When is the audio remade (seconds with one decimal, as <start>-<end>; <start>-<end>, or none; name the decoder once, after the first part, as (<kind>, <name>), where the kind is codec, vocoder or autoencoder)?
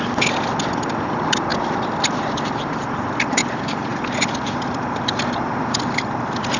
none